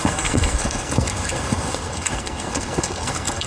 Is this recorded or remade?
remade